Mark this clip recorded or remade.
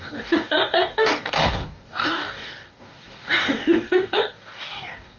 remade